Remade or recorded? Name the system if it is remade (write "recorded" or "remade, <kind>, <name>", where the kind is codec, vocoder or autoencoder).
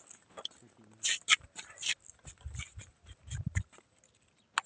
recorded